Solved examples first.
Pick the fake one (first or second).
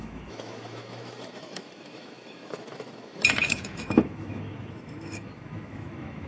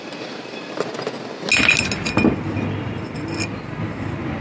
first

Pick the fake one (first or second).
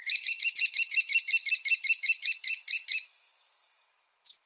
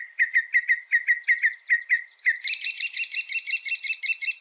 first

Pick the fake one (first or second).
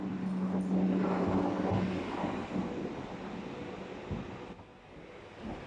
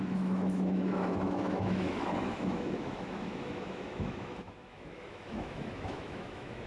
second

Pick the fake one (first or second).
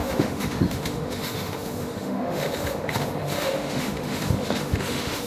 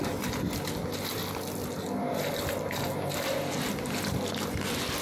first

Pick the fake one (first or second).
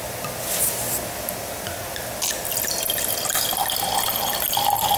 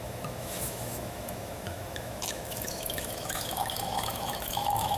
second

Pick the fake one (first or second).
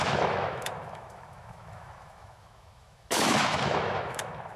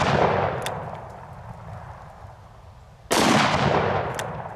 first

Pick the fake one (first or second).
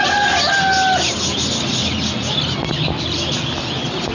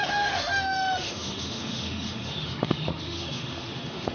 second